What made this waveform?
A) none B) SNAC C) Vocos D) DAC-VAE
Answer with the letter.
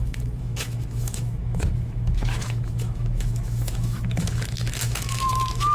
D